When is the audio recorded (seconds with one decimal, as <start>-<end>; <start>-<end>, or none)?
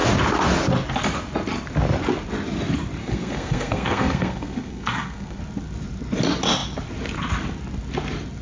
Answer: 0.0-3.0; 5.4-8.4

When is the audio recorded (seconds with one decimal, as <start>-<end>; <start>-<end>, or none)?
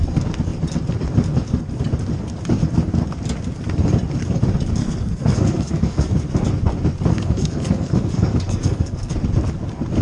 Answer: 0.0-4.8; 6.1-7.1; 9.1-10.0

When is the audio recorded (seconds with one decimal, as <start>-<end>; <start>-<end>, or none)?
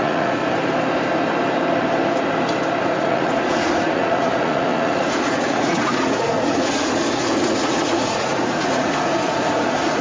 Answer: 0.4-2.8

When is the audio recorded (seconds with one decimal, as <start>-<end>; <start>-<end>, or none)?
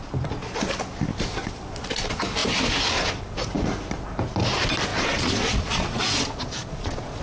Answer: 0.0-4.9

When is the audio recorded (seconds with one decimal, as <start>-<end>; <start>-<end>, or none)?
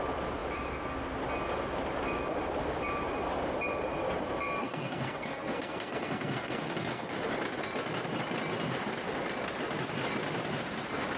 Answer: 0.0-4.6; 7.1-11.2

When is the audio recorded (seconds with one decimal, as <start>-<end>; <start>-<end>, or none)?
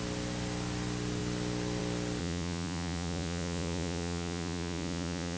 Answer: 0.0-2.2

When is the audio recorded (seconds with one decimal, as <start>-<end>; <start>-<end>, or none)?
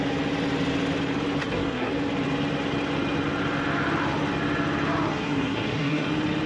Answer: 0.0-1.4; 1.9-5.1; 6.1-6.5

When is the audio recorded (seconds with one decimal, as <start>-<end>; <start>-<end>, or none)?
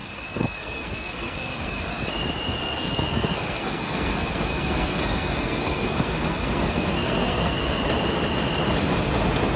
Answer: 1.9-2.6; 7.8-9.6